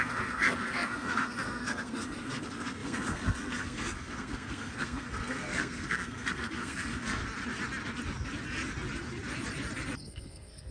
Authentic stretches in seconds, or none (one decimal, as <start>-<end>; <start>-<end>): 7.2-10.0